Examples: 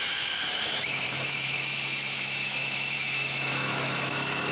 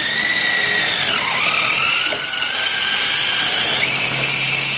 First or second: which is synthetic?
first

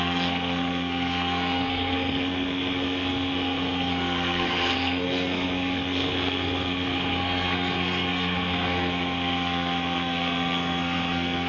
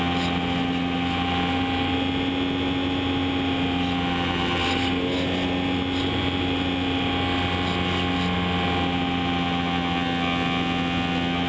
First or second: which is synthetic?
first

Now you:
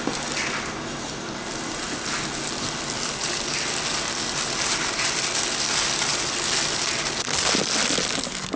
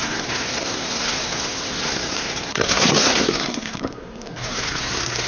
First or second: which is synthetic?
second